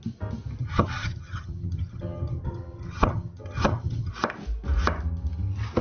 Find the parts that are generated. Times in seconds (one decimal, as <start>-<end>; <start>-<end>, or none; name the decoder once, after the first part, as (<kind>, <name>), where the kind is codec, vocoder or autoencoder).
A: 0.6-4.1 (vocoder, HiFi-GAN)